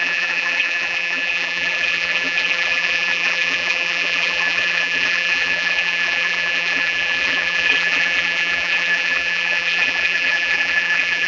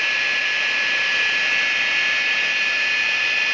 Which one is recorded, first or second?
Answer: second